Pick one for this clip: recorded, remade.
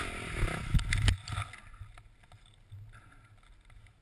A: recorded